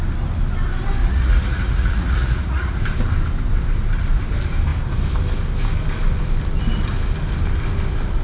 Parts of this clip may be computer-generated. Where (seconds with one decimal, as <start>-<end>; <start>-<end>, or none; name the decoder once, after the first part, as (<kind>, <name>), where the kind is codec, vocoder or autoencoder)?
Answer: 1.0-2.8 (vocoder, Vocos)